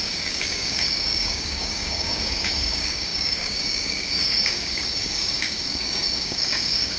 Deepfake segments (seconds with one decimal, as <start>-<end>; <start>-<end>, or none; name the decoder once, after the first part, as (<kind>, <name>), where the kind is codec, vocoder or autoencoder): 0.0-7.0 (codec, DAC)